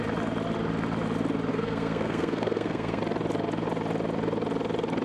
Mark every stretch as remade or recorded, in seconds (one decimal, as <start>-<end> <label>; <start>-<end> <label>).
0.0-1.5 recorded; 1.5-3.0 remade; 3.0-5.0 recorded